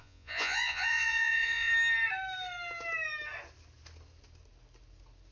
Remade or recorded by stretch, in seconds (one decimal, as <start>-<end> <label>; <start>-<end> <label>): 0.0-1.7 remade; 1.7-5.3 recorded